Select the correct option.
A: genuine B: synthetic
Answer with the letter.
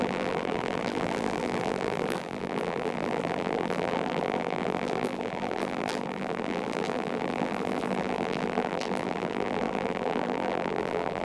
B